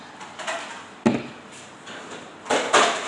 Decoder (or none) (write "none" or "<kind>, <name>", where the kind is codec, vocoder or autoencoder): none